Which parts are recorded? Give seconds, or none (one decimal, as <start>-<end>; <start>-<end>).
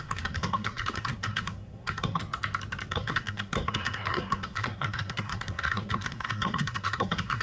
2.2-2.9